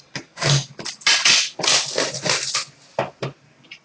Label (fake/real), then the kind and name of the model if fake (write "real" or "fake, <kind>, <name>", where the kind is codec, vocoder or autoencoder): real